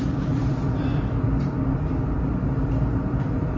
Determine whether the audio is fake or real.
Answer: real